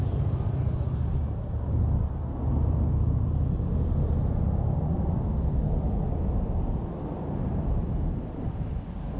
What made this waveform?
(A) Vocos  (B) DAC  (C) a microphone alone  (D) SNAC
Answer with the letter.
C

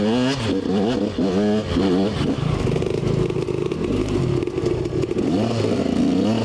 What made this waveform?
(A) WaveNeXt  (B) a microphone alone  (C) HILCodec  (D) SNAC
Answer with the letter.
B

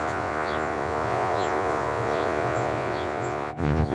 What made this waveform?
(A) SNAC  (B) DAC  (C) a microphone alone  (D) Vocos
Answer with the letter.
D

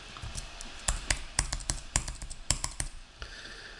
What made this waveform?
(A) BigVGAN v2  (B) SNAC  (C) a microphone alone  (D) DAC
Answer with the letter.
A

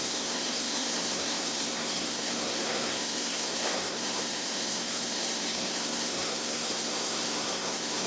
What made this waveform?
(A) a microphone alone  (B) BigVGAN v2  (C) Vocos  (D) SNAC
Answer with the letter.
D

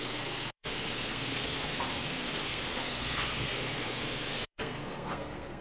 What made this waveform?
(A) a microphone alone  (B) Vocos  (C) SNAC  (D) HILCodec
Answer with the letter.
C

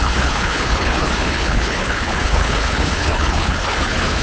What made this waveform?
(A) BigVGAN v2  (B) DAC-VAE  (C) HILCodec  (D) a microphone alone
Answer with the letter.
C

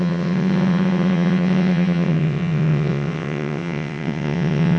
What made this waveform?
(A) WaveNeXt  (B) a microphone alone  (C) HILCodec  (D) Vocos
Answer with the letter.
A